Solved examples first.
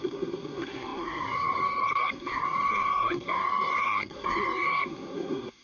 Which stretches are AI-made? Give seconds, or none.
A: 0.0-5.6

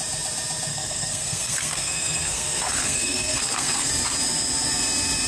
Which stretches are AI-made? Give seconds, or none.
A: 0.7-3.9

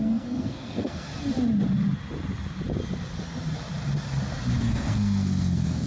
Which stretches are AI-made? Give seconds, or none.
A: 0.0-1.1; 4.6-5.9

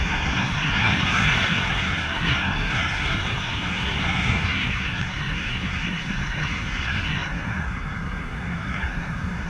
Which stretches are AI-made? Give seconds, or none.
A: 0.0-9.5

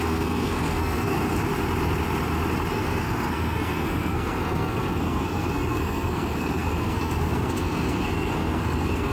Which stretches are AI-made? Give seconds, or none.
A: 0.0-1.4; 2.7-9.1

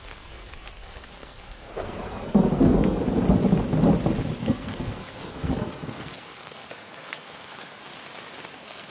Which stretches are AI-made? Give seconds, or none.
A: 0.0-3.0; 4.4-7.9; 8.5-8.9

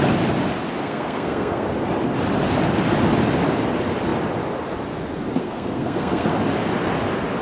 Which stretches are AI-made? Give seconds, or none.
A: 0.8-1.7; 5.4-6.3

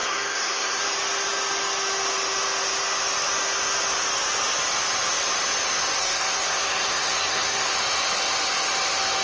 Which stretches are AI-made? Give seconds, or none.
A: 0.0-0.8; 6.0-7.7